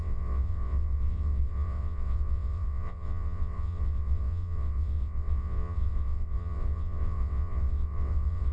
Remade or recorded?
remade